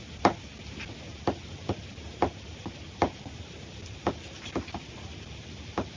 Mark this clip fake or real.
real